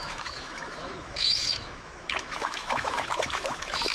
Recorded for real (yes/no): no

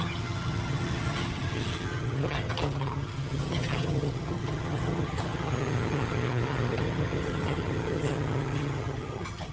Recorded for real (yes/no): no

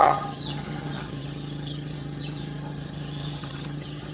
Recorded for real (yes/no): no